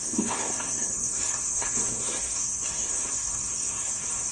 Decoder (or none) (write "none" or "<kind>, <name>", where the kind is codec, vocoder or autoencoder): codec, SNAC